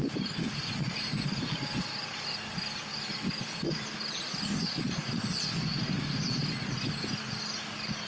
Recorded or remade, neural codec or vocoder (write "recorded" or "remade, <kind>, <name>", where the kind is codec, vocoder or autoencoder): recorded